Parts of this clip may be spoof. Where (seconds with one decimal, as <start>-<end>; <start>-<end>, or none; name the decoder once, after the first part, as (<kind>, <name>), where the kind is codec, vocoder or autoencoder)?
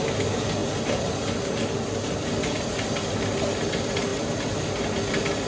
none